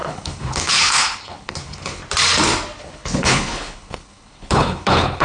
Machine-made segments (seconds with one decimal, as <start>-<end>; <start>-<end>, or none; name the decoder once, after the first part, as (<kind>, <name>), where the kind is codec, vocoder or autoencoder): 0.0-2.0 (codec, HILCodec); 2.8-5.2